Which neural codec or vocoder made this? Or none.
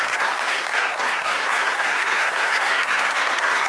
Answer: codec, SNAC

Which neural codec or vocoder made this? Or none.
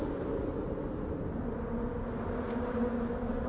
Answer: none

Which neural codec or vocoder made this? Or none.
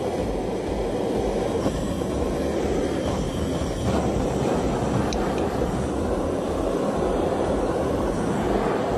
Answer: none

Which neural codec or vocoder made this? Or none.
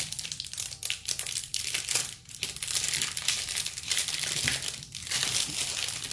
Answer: none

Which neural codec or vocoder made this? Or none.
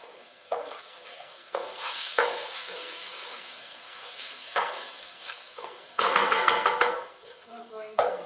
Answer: codec, SNAC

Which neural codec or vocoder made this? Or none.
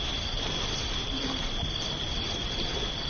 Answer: none